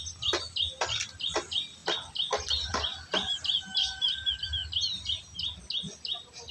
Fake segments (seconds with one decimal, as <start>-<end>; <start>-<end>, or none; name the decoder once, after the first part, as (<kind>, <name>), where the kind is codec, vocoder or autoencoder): none